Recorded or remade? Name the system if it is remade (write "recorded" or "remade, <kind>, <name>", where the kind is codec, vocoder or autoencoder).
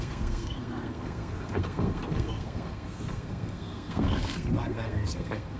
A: remade, codec, SNAC